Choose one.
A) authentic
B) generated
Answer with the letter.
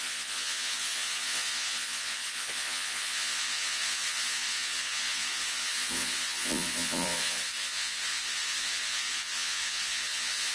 B